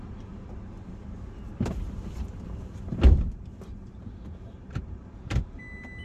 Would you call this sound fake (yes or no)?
no